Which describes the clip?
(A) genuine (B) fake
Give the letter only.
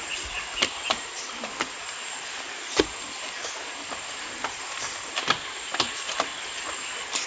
A